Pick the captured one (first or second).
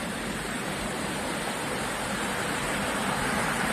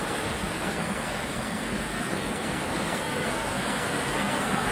first